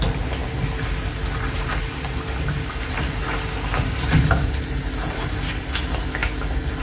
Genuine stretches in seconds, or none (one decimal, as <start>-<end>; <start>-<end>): 0.0-6.8